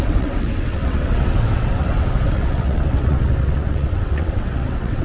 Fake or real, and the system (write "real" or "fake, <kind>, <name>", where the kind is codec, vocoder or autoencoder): fake, vocoder, WaveNeXt